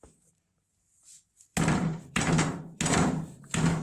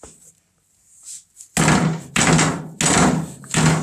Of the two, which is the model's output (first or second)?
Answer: first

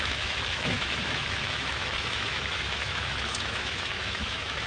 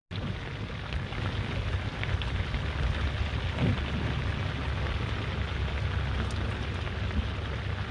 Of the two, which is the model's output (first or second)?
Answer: first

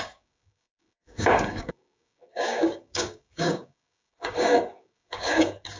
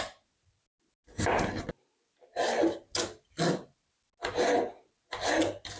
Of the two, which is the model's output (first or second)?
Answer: first